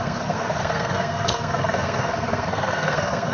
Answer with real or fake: fake